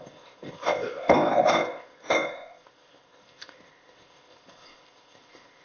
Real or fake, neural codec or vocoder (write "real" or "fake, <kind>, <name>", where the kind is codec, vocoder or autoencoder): fake, codec, ZipCodec